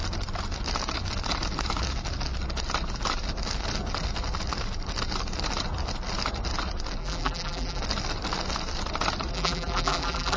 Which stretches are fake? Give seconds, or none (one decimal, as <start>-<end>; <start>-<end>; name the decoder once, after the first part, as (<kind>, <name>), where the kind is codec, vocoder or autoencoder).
7.0-7.8 (vocoder, BigVGAN v2); 9.3-10.4